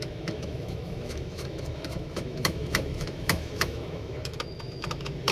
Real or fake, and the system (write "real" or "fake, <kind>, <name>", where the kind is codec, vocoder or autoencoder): fake, autoencoder, DAC-VAE